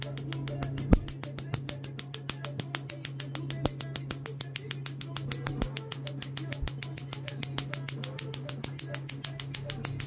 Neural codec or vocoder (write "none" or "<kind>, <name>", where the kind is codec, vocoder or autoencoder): none